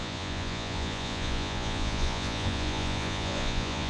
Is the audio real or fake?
fake